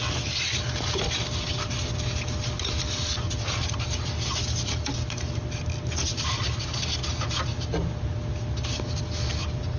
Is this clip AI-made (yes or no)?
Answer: no